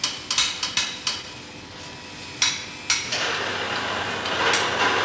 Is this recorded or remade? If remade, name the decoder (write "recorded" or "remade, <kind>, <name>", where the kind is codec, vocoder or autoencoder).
recorded